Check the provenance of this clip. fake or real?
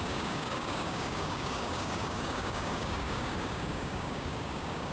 fake